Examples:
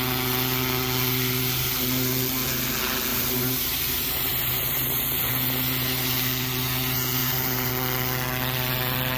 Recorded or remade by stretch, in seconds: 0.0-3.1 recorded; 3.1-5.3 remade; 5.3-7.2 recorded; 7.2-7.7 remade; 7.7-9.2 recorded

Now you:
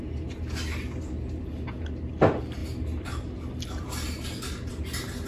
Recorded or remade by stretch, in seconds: 0.0-5.3 recorded

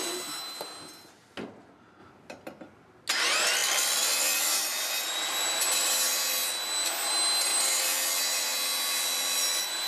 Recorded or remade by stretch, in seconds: 0.0-3.6 recorded; 3.6-5.6 remade; 5.6-7.5 recorded; 7.5-9.9 remade

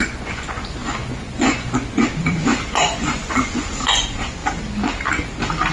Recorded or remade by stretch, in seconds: 0.0-4.4 remade; 4.4-5.7 recorded

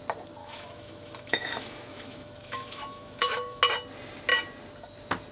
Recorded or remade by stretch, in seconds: 0.0-0.4 recorded; 0.4-3.6 remade; 3.6-5.3 recorded

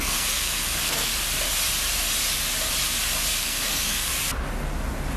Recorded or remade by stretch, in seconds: 0.0-1.1 remade; 1.1-3.4 recorded; 3.4-4.1 remade; 4.1-5.2 recorded